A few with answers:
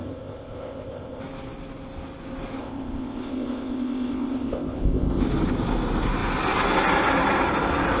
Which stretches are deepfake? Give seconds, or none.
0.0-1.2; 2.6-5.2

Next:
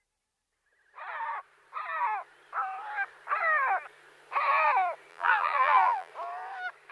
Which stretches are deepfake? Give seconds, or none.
5.1-6.1